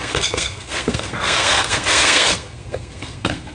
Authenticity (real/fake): fake